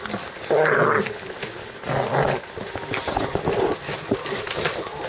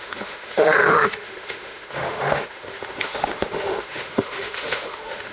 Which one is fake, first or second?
second